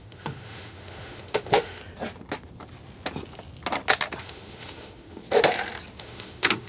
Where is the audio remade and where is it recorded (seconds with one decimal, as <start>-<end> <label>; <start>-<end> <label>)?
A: 0.0-1.8 remade; 1.8-4.2 recorded; 4.2-5.2 remade; 5.2-6.0 recorded; 6.0-6.7 remade